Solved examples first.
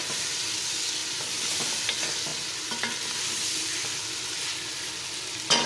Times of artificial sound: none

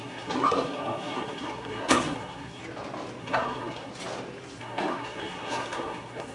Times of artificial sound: 0.0-2.6; 3.2-3.9; 4.6-6.3

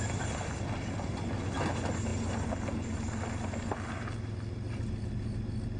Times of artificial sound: none

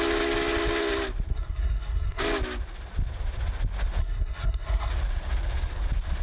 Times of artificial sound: 1.3-2.2; 4.0-4.9

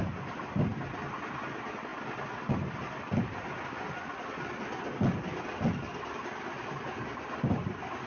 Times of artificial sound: none